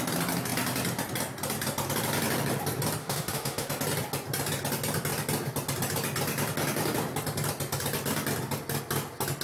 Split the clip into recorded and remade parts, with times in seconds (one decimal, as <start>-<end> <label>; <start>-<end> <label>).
0.0-3.0 recorded; 3.0-3.7 remade; 3.7-9.4 recorded